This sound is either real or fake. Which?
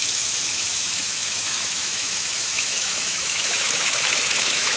fake